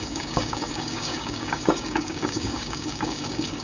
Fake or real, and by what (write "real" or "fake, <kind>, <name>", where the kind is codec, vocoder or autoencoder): fake, codec, DAC